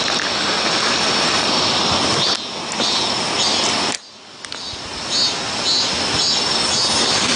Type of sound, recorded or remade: recorded